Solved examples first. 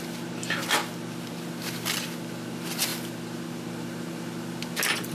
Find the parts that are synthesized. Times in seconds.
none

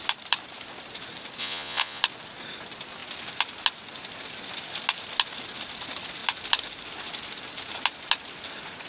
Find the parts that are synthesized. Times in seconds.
1.4-2.0 (vocoder, Vocos)

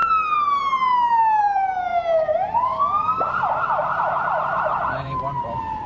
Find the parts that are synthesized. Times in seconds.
1.4-5.9 (vocoder, BigVGAN v2)

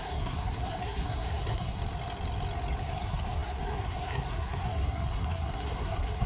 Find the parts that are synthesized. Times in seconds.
0.0-1.8 (codec, SNAC); 2.8-6.3

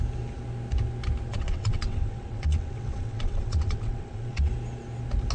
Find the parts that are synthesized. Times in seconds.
1.3-4.5 (vocoder, WaveNeXt)